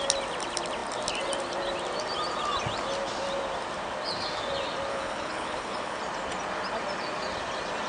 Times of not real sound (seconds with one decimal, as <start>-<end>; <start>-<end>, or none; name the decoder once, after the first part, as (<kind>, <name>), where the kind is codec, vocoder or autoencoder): 4.9-6.0 (codec, HILCodec)